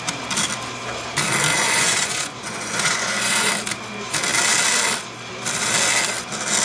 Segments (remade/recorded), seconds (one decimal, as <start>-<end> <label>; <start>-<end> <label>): 0.0-1.5 recorded; 1.5-3.5 remade; 3.5-6.6 recorded